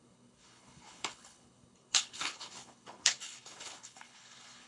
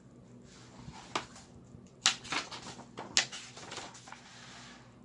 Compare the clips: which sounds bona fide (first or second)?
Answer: second